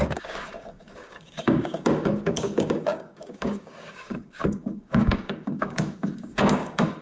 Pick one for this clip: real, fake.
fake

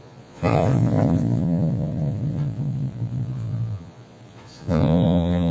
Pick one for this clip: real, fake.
fake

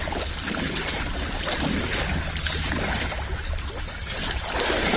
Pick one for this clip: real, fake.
real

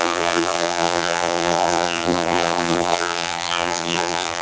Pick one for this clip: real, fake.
fake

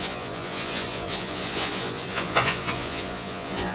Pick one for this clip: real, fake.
fake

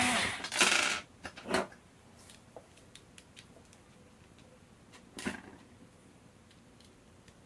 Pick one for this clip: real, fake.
real